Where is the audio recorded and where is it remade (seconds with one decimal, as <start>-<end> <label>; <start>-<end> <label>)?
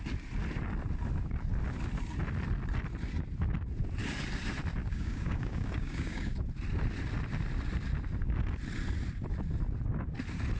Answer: 0.0-4.8 recorded; 4.8-6.4 remade; 6.4-10.6 recorded